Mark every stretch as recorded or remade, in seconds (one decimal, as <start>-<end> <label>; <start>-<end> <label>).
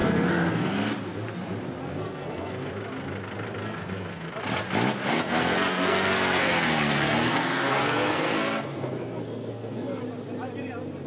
0.0-0.7 remade; 0.7-1.9 recorded; 1.9-2.7 remade; 2.7-3.6 recorded; 3.6-4.3 remade; 4.3-5.1 recorded; 5.1-10.0 remade; 10.0-11.1 recorded